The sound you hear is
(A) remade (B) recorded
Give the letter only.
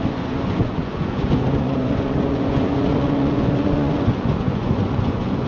A